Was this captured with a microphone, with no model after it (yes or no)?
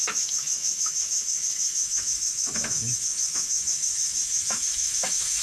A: no